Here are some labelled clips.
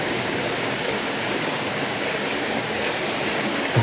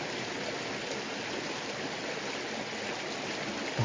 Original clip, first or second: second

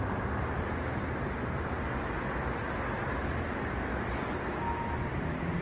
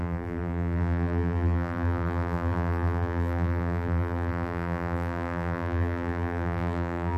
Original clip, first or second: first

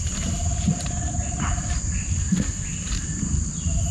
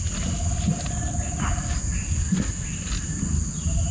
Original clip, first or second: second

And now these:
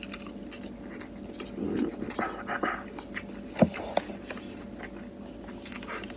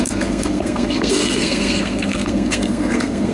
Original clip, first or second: first